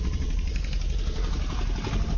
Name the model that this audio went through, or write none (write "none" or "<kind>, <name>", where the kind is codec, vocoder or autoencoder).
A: none